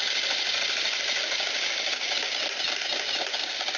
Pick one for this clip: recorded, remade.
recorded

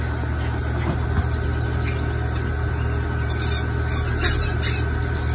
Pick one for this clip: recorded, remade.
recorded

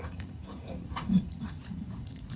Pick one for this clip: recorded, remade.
remade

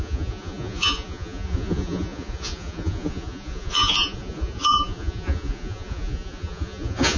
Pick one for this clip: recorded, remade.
remade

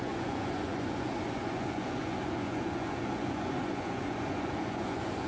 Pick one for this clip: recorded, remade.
remade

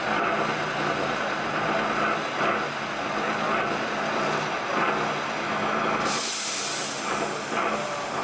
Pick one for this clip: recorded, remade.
recorded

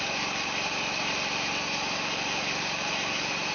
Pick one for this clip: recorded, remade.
recorded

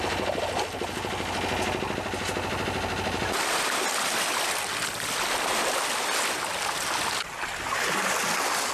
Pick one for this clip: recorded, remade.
recorded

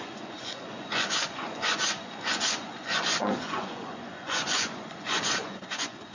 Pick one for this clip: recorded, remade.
remade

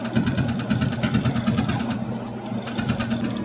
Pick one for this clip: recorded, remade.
recorded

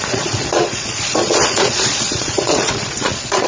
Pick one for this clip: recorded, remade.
remade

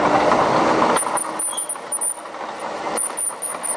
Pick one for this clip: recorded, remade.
recorded